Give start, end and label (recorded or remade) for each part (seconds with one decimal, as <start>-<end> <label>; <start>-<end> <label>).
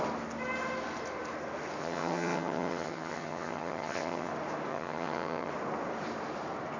0.0-1.8 recorded; 1.8-4.3 remade; 4.3-4.7 recorded; 4.7-5.5 remade; 5.5-6.8 recorded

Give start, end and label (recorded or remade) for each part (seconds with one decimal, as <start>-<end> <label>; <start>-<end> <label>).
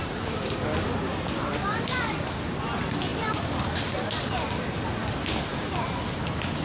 0.0-6.6 recorded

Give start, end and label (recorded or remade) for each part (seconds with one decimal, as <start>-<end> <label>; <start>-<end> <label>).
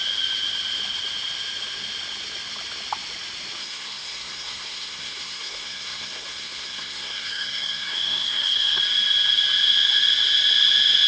0.0-3.6 recorded; 3.6-8.8 remade; 8.8-11.1 recorded